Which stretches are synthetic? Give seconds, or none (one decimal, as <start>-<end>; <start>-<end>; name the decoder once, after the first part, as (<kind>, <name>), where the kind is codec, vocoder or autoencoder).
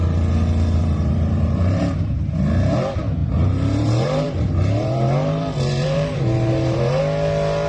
0.8-2.4 (vocoder, BigVGAN v2); 3.2-7.0